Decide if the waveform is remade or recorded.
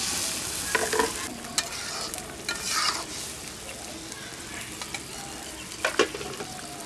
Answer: recorded